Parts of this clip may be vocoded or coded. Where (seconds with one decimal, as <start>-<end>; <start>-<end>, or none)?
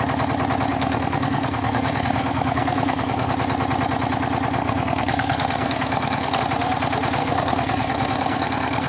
0.7-3.3; 4.6-6.4; 7.2-8.9